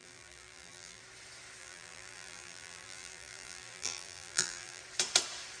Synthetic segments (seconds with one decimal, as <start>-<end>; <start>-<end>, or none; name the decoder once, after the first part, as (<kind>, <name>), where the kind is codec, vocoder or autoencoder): 0.0-1.0 (vocoder, BigVGAN v2); 1.6-4.8